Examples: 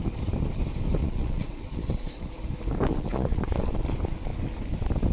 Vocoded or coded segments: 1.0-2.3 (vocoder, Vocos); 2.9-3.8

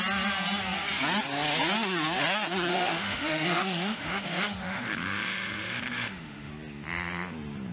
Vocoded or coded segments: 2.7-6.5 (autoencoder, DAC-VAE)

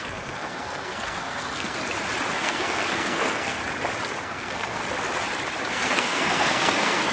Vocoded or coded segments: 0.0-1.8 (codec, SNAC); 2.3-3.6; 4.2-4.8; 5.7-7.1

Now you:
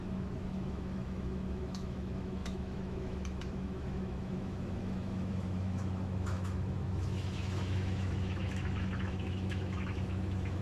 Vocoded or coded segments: 0.0-10.6 (autoencoder, DAC-VAE)